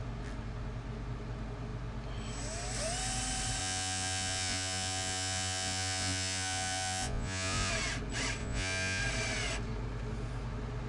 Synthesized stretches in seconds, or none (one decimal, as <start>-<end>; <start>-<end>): 3.6-7.7; 8.4-9.0